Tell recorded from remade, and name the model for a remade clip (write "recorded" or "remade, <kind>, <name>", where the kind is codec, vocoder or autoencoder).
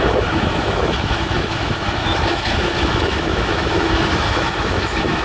remade, autoencoder, DAC-VAE